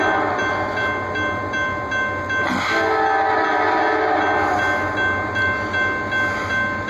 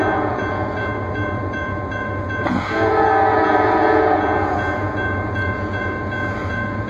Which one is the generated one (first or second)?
second